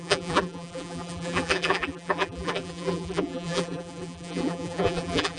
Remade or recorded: remade